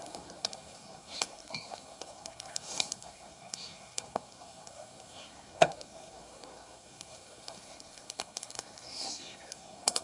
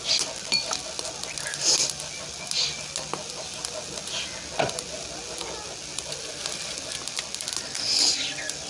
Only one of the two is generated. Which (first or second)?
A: first